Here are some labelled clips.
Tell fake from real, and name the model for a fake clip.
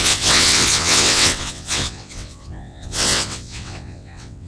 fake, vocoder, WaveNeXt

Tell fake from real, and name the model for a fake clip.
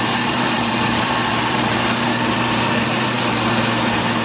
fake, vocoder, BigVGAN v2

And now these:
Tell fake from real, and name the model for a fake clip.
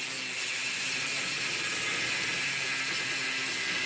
real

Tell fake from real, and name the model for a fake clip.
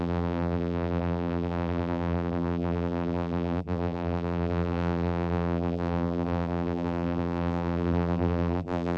fake, vocoder, BigVGAN v2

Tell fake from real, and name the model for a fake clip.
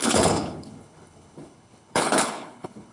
fake, codec, HILCodec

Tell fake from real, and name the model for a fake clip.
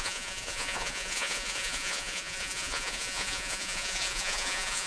fake, vocoder, Vocos